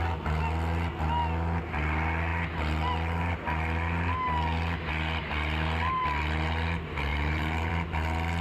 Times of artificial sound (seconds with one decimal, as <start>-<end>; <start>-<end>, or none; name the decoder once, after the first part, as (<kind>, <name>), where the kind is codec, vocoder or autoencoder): 7.1-7.7 (vocoder, BigVGAN v2)